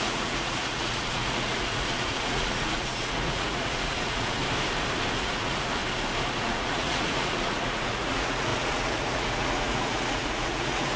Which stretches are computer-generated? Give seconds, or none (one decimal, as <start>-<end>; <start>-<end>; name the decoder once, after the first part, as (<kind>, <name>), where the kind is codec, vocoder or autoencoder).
0.0-4.4 (vocoder, Vocos); 5.2-5.8; 6.4-11.0